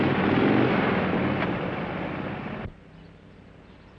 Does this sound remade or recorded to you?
recorded